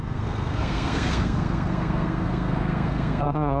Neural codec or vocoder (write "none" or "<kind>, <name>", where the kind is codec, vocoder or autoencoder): codec, SNAC